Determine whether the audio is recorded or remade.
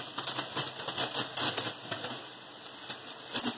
recorded